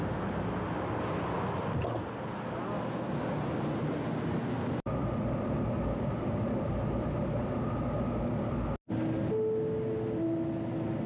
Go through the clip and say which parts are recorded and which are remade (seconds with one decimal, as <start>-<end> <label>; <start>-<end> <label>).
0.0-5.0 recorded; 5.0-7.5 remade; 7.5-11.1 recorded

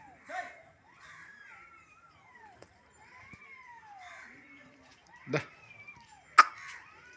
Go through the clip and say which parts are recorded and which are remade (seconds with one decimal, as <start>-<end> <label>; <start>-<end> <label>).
0.0-5.5 remade; 5.5-6.8 recorded; 6.8-7.2 remade

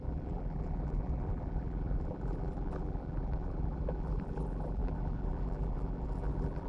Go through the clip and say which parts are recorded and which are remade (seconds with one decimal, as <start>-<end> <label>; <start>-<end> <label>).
0.0-6.7 remade

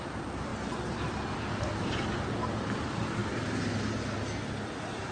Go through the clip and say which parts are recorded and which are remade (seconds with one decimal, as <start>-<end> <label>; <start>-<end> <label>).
0.0-0.5 remade; 0.5-2.3 recorded; 2.3-3.2 remade; 3.2-4.2 recorded; 4.2-5.1 remade